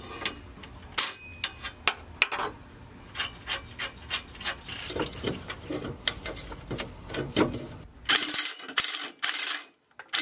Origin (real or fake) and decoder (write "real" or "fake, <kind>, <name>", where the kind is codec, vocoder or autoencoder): real